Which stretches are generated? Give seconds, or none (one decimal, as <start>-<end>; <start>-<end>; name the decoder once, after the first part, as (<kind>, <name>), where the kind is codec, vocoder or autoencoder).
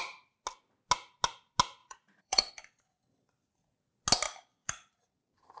1.8-2.5 (vocoder, Vocos); 4.6-5.1